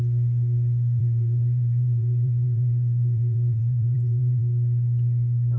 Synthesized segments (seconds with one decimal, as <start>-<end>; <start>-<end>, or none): 1.0-4.4